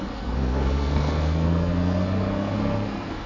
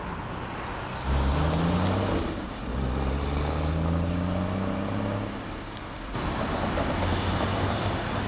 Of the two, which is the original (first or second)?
second